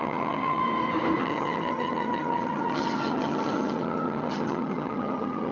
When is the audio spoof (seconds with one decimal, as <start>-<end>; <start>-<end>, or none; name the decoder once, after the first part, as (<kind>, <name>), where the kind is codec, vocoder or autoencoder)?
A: 0.0-0.6 (vocoder, HiFi-GAN); 1.2-5.5